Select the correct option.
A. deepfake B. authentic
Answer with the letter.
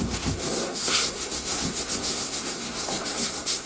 A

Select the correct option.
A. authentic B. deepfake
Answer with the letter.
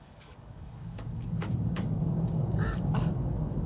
B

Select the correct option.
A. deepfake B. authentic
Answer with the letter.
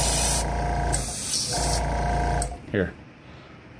B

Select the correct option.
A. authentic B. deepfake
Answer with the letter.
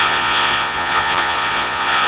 B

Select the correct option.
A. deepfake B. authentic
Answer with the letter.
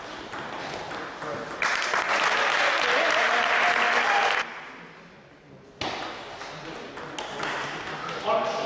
B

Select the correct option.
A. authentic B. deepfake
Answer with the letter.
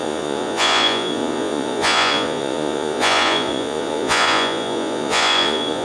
B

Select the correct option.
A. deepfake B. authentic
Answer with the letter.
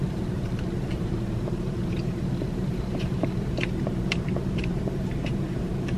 A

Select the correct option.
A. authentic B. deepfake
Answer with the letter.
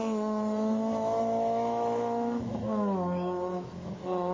B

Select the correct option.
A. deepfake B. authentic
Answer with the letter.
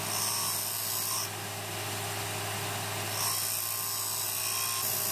B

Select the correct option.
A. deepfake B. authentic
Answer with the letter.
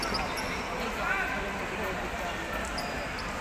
B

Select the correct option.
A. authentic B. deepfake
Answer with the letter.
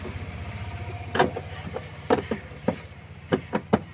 B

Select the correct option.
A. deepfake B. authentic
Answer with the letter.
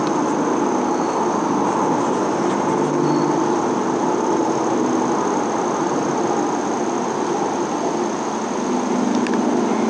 B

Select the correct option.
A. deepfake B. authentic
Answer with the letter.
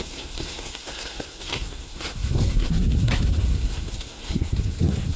A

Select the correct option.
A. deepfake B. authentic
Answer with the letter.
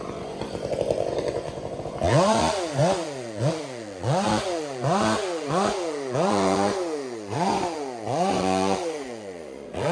A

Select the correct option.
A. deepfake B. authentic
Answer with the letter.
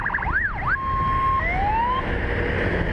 B